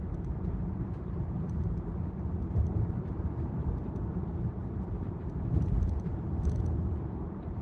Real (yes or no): no